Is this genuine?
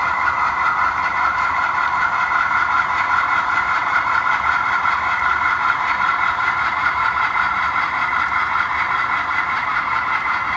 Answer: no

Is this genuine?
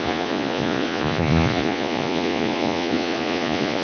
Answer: no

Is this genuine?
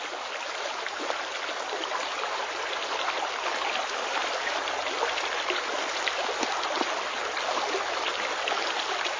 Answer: yes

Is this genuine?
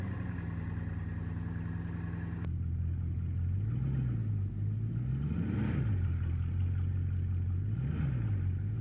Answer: yes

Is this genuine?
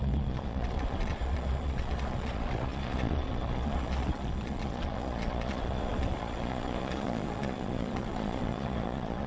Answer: no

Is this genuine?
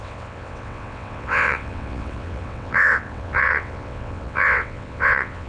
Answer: no